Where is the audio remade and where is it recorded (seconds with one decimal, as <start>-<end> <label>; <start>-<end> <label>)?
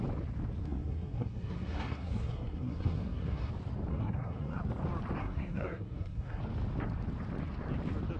0.0-0.6 recorded; 0.6-3.5 remade; 3.5-3.9 recorded; 3.9-4.6 remade; 4.6-5.2 recorded; 5.2-6.4 remade; 6.4-8.2 recorded